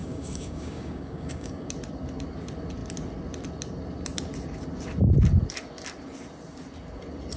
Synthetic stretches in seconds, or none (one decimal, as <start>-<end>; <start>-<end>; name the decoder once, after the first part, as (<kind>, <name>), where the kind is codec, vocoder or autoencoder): 0.0-1.7 (codec, DAC)